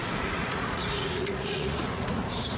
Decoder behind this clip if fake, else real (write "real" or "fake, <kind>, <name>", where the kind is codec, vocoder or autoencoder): fake, vocoder, Vocos